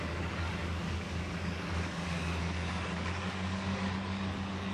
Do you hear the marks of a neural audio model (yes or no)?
yes